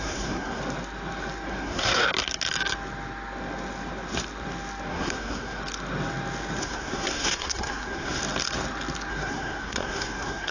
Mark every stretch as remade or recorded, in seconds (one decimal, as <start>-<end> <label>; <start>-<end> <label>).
0.0-0.6 remade; 0.6-1.5 recorded; 1.5-2.0 remade; 2.0-4.9 recorded; 4.9-5.6 remade; 5.6-6.6 recorded; 6.6-8.2 remade; 8.2-9.1 recorded; 9.1-10.5 remade